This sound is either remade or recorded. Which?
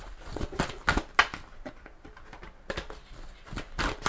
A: recorded